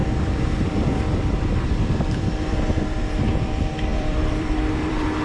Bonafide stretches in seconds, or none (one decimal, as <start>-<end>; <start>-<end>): none